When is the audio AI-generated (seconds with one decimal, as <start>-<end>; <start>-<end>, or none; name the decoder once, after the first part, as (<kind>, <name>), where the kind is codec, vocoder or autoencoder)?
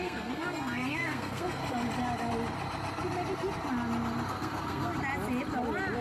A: 0.0-1.6 (codec, SNAC); 4.3-4.9